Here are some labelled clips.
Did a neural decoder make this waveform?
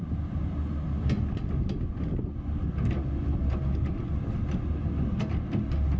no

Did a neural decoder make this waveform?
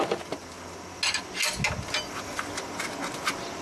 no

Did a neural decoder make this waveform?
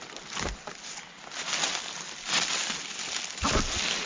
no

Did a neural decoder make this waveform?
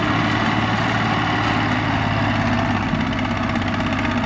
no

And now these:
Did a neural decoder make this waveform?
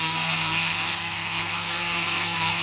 yes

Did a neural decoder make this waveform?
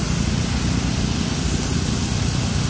no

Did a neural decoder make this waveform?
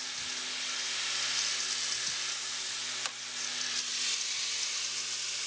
no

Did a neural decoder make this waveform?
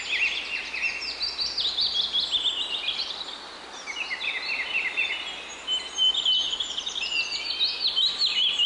no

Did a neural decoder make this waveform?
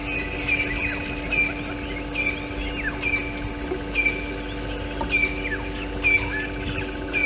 no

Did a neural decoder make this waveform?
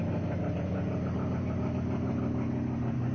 no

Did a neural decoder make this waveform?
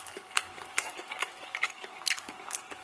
yes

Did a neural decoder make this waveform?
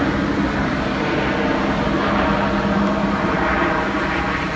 no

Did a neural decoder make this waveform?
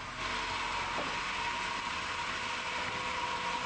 no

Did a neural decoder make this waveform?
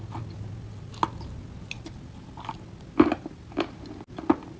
no